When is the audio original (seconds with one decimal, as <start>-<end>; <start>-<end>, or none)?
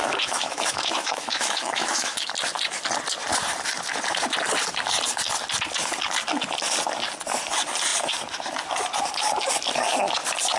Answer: 2.3-10.6